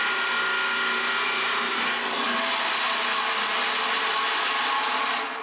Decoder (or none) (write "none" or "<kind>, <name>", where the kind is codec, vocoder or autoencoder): none